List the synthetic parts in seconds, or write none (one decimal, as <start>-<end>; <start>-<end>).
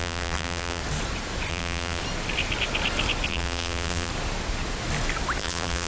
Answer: 0.0-0.8; 1.5-2.0; 3.3-4.1; 5.4-5.9